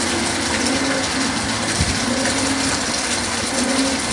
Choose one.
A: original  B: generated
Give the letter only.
A